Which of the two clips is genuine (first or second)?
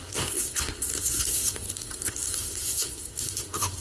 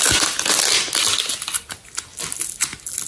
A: second